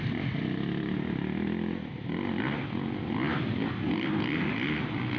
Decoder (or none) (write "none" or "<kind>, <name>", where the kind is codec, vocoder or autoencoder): none